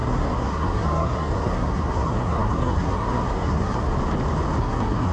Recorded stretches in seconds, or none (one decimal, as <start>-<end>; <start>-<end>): 3.9-4.6